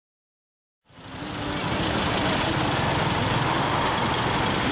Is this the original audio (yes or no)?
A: no